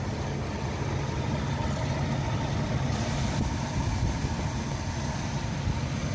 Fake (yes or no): no